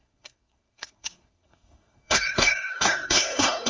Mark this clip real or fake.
fake